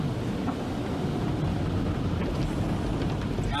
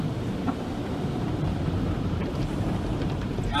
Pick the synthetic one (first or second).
second